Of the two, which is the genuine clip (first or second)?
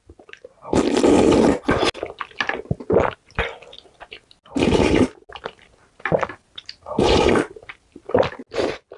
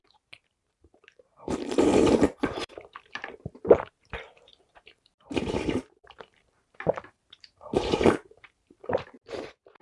first